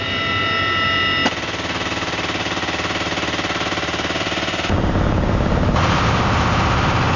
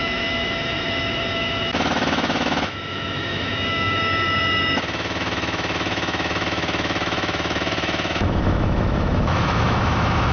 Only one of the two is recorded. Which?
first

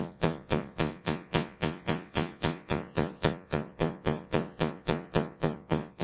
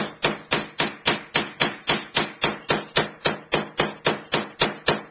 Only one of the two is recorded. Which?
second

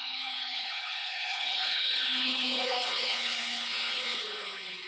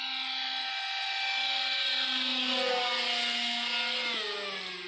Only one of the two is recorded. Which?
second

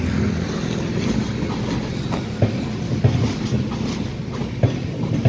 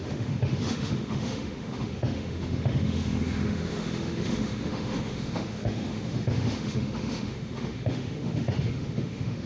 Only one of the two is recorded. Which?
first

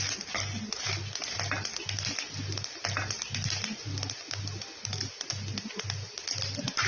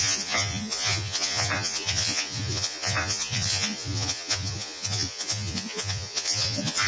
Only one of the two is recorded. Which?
first